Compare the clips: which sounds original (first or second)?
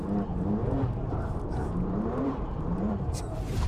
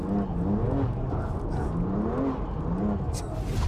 second